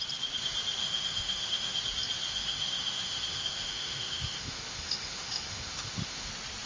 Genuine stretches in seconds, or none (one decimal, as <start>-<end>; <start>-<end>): 0.0-0.8; 1.8-2.3; 6.3-6.7

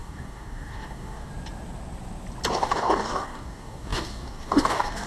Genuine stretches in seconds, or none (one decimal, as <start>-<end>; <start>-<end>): 1.3-2.5

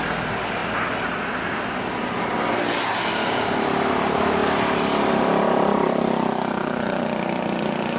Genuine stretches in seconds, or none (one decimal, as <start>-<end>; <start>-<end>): 0.0-8.0